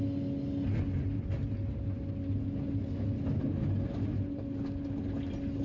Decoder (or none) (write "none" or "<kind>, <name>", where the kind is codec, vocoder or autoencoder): none